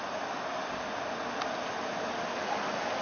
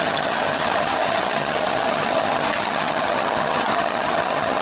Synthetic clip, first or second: second